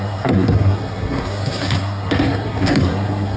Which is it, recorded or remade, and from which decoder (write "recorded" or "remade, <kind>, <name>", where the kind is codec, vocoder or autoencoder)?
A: remade, codec, SNAC